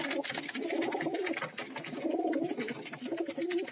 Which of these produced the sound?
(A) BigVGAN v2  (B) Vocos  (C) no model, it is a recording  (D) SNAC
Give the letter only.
C